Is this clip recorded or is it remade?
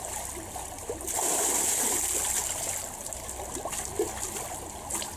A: recorded